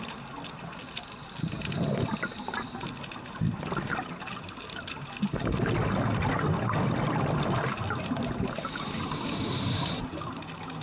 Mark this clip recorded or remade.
recorded